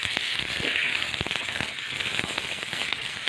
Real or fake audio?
fake